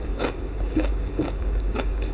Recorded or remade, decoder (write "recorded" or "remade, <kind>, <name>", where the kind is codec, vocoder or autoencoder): remade, codec, DAC